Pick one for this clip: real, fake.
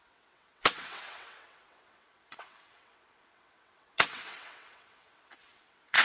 fake